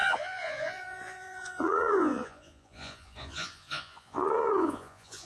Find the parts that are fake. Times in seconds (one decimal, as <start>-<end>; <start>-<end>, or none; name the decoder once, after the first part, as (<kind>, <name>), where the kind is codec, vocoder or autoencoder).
0.0-5.3 (vocoder, Vocos)